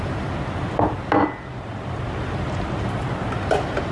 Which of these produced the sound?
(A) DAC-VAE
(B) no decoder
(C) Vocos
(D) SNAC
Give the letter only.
B